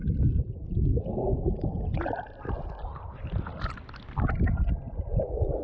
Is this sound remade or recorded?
recorded